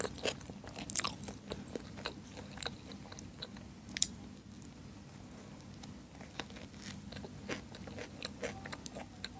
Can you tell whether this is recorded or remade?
recorded